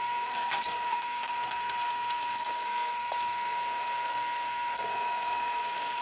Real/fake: fake